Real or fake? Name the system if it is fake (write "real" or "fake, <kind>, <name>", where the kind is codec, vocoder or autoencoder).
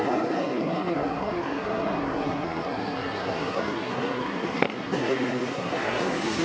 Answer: fake, codec, SNAC